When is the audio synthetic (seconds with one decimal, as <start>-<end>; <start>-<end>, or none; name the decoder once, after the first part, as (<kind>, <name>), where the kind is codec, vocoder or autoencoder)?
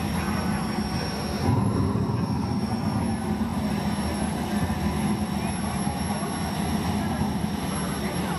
none